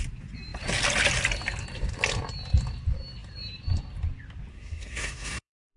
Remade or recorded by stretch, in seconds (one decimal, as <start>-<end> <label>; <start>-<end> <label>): 0.0-4.5 recorded; 4.5-5.8 remade